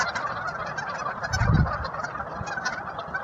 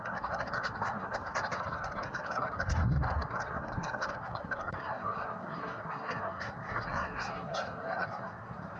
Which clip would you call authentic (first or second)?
first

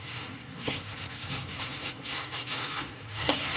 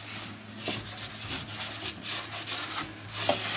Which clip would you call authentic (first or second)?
second